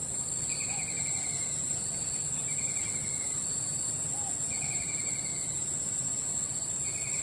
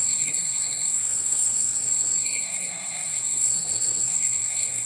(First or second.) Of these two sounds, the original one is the first